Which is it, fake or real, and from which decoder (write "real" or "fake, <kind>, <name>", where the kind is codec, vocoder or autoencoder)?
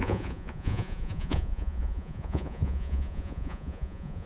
fake, vocoder, Vocos